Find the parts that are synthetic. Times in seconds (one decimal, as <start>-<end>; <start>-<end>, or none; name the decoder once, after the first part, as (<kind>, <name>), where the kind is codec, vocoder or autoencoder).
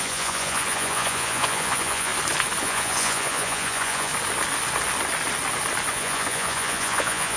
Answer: 0.0-2.1 (vocoder, Vocos); 2.6-4.1; 5.9-7.4